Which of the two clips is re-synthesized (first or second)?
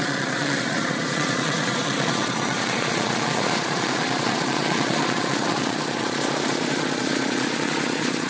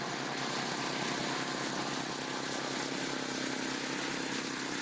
first